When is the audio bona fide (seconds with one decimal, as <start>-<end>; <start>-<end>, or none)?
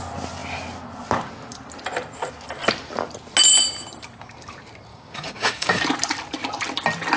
0.0-4.9; 5.8-7.2